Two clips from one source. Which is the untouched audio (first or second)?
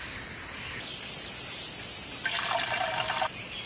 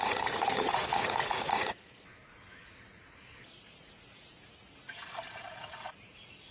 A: first